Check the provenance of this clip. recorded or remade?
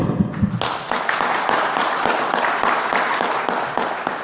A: recorded